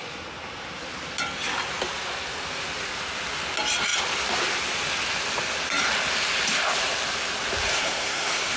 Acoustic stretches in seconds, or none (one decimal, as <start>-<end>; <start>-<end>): 0.0-7.7